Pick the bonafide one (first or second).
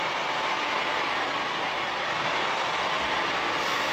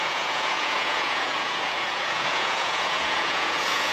first